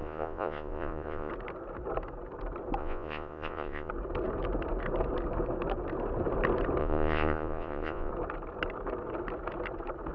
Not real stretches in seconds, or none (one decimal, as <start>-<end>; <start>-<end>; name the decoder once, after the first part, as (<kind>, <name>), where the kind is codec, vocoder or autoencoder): 0.0-1.3 (vocoder, Vocos); 2.8-3.9; 6.8-8.1